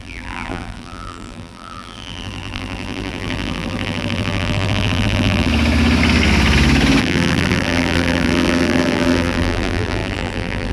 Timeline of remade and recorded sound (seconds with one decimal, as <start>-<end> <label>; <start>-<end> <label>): 0.0-5.5 remade; 5.5-7.0 recorded; 7.0-10.7 remade